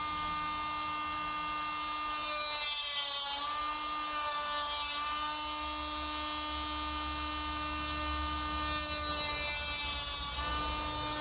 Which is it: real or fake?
real